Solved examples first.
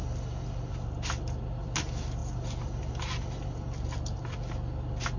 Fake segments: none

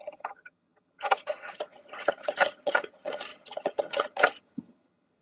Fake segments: 0.0-5.2 (vocoder, HiFi-GAN)

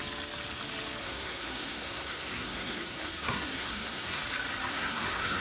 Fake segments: 1.0-4.2 (codec, SNAC); 4.7-5.4

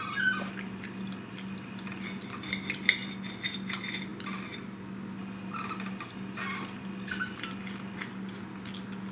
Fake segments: none

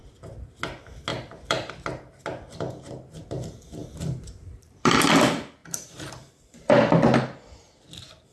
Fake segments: 1.1-1.7 (vocoder, BigVGAN v2); 3.8-5.1; 5.6-6.9

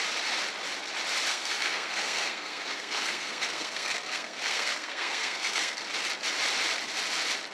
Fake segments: 1.3-5.8 (codec, SNAC)